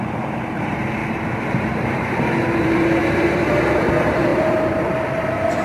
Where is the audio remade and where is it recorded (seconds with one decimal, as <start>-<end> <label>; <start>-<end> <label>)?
0.0-1.0 remade; 1.0-1.6 recorded; 1.6-5.6 remade